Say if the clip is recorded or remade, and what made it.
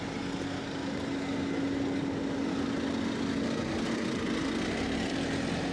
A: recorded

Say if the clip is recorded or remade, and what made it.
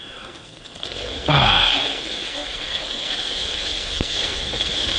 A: remade, codec, SNAC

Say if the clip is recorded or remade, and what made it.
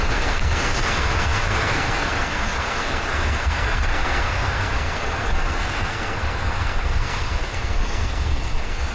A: remade, codec, SNAC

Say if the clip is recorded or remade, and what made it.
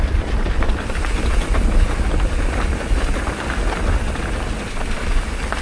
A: recorded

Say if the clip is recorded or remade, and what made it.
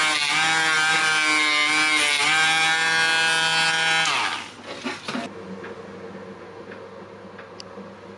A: recorded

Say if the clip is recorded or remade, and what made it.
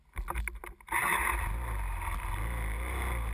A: recorded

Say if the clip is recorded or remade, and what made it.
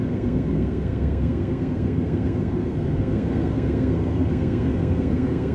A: remade, codec, SNAC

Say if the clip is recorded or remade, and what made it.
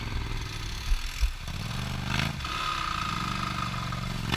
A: recorded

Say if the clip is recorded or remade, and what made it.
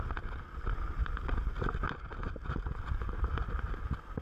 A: recorded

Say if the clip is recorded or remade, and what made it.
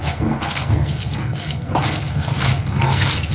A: remade, codec, SNAC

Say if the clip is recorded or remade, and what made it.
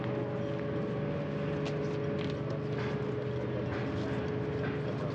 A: recorded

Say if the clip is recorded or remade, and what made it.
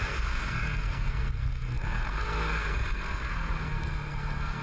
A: remade, codec, SNAC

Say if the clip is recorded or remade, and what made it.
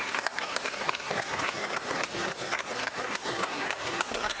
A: remade, codec, SNAC